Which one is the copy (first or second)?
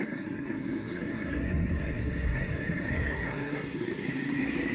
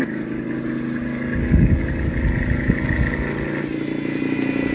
first